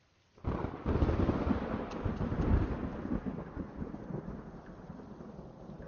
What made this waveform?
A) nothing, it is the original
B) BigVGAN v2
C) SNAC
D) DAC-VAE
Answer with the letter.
A